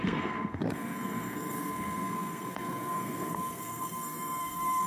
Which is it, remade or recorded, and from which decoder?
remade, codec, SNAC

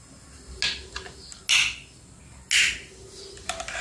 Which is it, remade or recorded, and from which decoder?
recorded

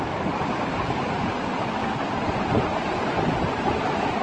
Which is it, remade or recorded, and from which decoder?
recorded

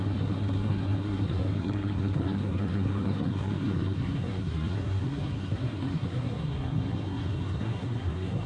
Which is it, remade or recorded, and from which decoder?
remade, codec, SNAC